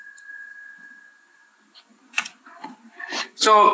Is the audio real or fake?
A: fake